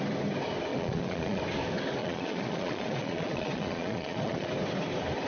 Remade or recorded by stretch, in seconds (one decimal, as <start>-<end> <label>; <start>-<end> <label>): 0.0-0.7 recorded; 0.7-1.4 remade; 1.4-2.0 recorded; 2.0-4.5 remade; 4.5-5.3 recorded